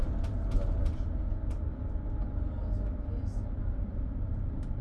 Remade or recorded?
recorded